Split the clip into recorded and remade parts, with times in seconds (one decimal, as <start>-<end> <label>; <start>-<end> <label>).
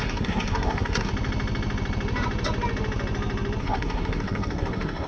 0.0-1.1 remade; 1.1-3.6 recorded; 3.6-5.1 remade